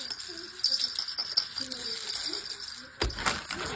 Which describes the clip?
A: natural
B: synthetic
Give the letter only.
A